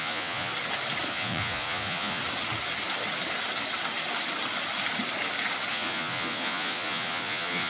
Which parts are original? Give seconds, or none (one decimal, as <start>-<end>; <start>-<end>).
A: 0.5-1.1; 2.2-5.7